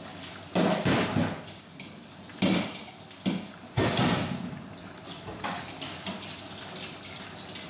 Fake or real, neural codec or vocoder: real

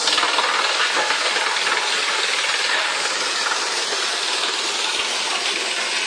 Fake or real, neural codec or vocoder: fake, vocoder, BigVGAN v2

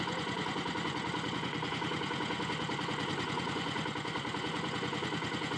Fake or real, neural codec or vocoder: fake, vocoder, Vocos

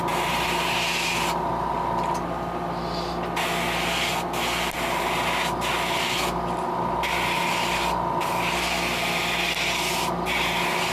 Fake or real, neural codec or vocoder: real